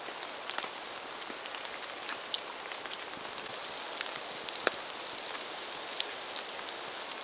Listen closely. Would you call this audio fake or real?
real